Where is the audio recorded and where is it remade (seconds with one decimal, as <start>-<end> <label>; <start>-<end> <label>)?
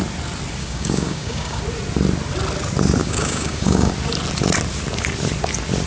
0.0-0.6 recorded; 0.6-1.6 remade; 1.6-3.0 recorded; 3.0-3.9 remade; 3.9-5.9 recorded